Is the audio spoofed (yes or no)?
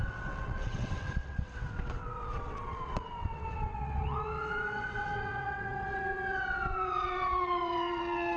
yes